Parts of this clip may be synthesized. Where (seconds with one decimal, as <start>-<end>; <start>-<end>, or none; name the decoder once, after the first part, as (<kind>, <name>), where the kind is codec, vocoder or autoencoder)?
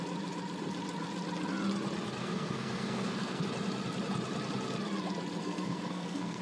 2.2-3.4 (codec, SNAC); 5.4-6.4